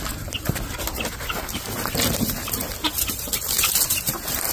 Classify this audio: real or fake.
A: fake